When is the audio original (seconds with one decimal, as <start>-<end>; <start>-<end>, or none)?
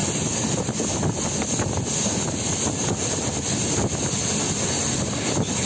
0.0-5.7